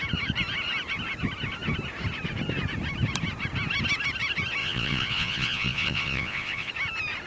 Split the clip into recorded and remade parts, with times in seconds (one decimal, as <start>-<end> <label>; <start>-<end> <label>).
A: 0.0-4.6 recorded; 4.6-6.7 remade; 6.7-7.3 recorded